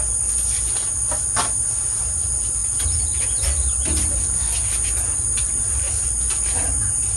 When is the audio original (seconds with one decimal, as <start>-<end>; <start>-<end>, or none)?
0.0-7.2